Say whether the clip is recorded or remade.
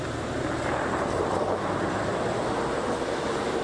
remade